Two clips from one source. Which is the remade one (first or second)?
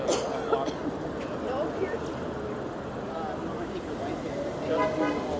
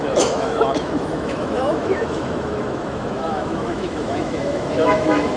second